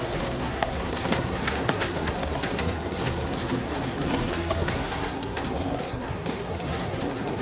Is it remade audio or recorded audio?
remade